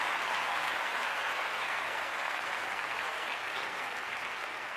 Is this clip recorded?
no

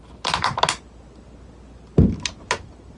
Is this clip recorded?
yes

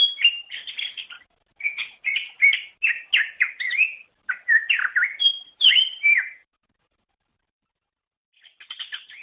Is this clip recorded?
yes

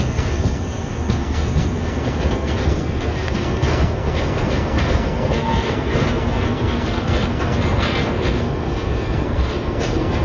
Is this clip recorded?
no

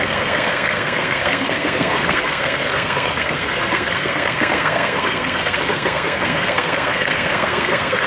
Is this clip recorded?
no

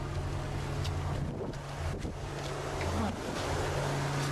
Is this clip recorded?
yes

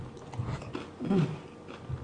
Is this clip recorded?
yes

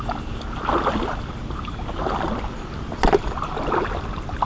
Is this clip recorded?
yes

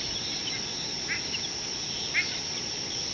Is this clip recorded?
yes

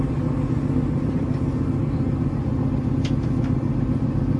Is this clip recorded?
yes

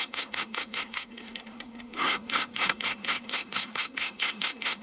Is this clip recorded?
no